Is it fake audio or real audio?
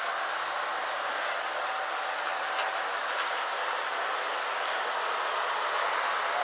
real